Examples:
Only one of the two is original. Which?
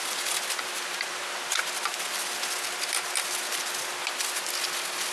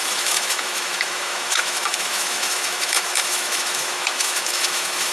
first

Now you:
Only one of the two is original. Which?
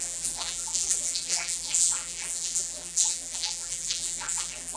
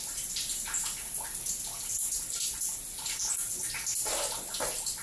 second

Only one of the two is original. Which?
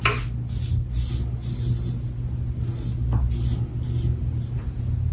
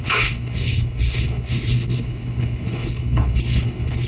first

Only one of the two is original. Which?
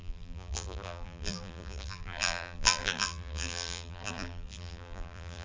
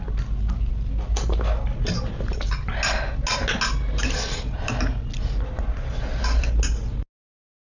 second